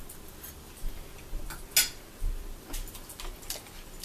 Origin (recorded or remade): recorded